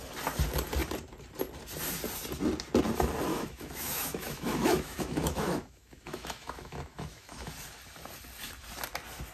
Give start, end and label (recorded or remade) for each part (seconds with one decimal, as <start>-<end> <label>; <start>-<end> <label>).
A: 0.0-3.3 recorded; 3.3-7.5 remade; 7.5-9.3 recorded